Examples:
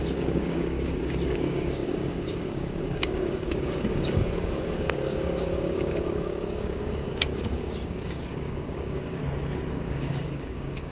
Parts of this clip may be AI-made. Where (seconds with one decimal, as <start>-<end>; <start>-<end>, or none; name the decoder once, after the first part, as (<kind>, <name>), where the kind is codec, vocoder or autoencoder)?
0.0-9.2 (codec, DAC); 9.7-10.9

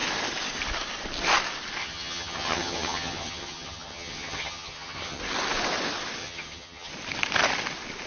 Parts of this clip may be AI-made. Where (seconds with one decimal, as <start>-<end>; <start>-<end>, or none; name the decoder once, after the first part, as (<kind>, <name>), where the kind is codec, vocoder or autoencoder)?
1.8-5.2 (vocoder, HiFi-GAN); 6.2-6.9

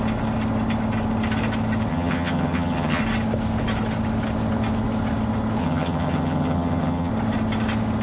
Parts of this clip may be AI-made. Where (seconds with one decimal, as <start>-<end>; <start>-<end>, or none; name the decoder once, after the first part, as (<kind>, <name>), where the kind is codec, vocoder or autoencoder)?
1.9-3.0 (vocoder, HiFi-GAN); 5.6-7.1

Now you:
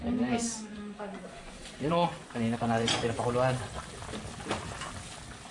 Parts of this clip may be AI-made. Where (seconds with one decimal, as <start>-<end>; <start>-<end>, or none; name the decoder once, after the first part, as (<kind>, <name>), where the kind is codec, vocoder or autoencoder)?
0.4-3.7 (vocoder, Vocos)

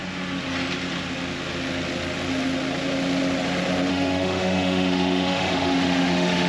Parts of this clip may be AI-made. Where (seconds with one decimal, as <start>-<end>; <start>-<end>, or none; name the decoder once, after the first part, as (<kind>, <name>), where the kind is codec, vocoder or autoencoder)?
3.9-6.5 (autoencoder, DAC-VAE)

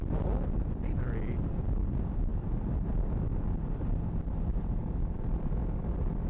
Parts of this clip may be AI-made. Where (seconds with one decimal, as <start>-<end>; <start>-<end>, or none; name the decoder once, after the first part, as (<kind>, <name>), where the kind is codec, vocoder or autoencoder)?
none